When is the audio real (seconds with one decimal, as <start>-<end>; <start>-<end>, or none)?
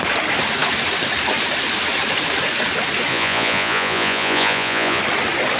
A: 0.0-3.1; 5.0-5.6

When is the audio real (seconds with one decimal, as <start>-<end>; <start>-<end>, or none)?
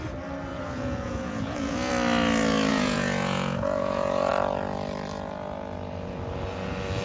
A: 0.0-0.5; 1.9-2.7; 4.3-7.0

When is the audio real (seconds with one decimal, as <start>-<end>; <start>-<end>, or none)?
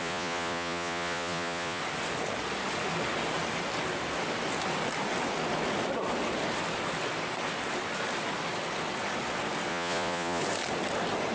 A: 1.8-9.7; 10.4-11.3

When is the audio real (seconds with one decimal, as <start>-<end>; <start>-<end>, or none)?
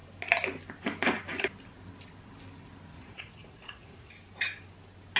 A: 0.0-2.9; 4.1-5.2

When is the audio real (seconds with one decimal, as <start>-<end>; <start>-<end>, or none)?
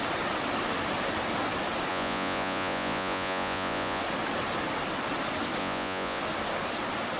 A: 0.0-1.9; 4.0-5.6; 6.2-7.2